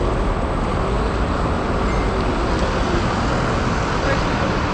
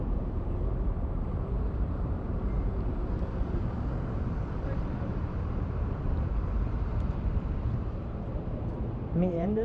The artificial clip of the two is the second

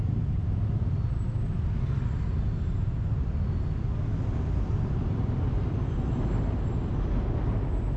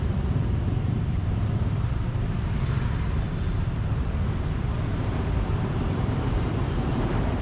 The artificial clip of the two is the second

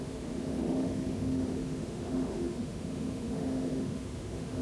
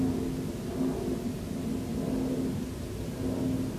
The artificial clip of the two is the first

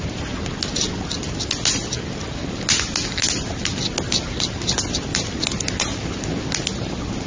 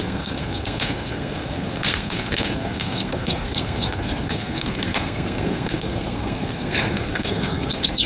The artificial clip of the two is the second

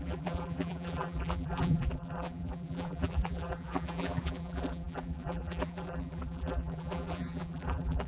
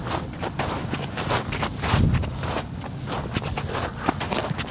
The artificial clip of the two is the first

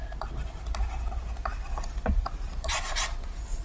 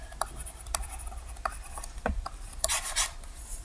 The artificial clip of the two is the second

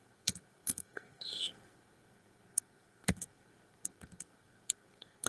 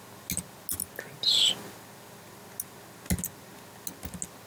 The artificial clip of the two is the first